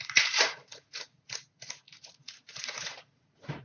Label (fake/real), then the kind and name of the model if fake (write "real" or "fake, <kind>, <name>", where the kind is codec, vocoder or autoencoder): fake, vocoder, Vocos